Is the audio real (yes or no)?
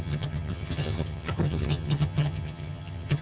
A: no